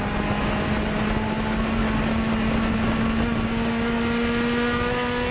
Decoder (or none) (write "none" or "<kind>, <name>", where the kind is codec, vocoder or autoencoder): none